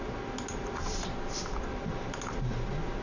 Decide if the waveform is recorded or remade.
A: recorded